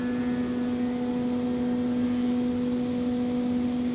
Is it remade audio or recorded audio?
recorded